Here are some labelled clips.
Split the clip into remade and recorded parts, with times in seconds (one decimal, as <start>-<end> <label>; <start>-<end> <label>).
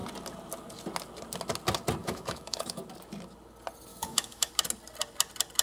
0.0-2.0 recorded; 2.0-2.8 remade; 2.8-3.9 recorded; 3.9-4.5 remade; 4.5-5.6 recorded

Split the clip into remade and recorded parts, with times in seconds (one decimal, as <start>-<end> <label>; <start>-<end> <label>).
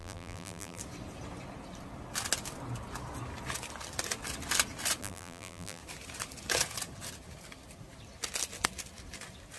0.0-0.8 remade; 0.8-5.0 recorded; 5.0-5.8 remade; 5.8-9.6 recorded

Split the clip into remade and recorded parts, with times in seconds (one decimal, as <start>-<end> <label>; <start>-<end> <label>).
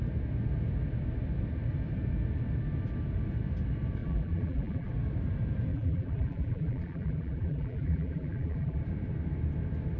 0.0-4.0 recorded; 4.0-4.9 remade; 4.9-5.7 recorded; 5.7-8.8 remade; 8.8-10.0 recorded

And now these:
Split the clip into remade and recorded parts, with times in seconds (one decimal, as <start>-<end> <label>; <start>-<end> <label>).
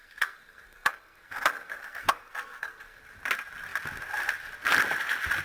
0.0-3.0 remade; 3.0-5.4 recorded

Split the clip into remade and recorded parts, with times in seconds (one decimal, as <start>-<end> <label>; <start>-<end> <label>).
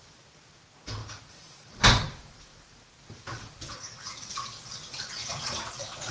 0.0-1.0 recorded; 1.0-1.8 remade; 1.8-3.3 recorded; 3.3-4.3 remade; 4.3-4.8 recorded; 4.8-6.1 remade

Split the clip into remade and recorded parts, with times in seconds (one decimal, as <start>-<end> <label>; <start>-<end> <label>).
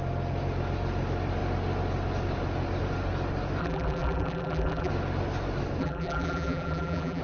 0.0-3.6 recorded; 3.6-4.9 remade; 4.9-5.8 recorded; 5.8-7.2 remade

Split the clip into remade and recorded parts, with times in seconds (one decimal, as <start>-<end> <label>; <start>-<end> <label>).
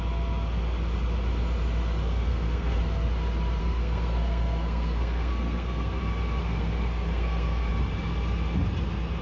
0.0-2.0 recorded; 2.0-2.8 remade; 2.8-3.6 recorded; 3.6-6.0 remade; 6.0-6.4 recorded; 6.4-7.7 remade; 7.7-9.2 recorded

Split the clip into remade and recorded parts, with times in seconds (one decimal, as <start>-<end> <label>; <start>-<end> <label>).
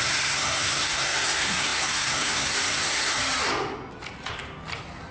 0.0-3.2 remade; 3.2-5.1 recorded